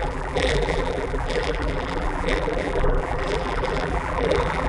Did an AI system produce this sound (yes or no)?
yes